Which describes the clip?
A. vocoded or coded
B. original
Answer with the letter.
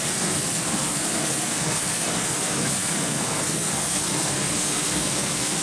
A